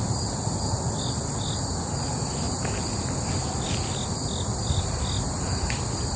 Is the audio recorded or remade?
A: recorded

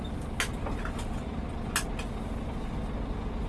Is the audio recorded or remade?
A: recorded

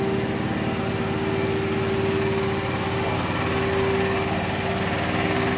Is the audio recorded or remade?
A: recorded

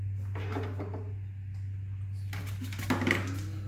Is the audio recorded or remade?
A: recorded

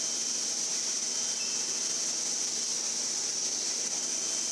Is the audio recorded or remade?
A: recorded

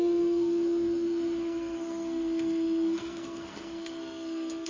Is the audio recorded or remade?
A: remade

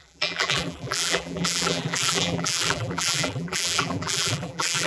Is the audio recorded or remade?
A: remade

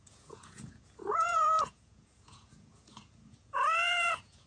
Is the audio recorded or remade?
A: remade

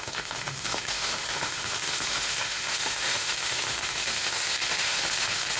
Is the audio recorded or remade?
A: remade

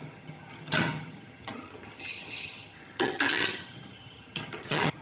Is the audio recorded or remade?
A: remade